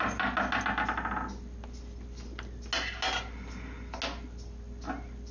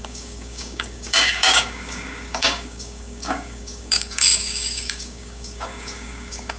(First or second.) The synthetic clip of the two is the second